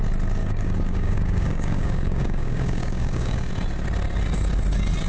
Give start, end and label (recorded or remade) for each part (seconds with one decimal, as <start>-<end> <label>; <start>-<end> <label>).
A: 0.0-0.4 recorded; 0.4-3.5 remade; 3.5-5.1 recorded